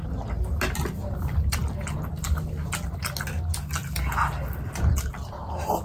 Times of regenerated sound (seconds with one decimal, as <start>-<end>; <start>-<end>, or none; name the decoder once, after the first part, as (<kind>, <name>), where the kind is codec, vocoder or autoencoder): none